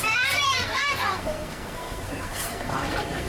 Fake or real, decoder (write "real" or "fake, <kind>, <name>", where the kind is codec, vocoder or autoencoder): fake, codec, SNAC